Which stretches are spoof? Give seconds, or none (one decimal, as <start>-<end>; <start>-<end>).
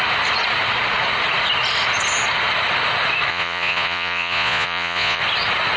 3.3-5.2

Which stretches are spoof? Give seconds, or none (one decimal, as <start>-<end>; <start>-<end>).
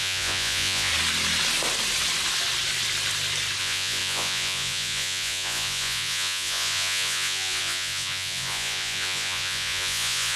0.0-0.9; 3.6-10.4